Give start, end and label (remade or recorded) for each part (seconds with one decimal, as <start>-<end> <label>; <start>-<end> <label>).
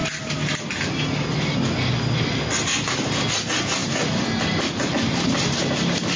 0.0-6.2 recorded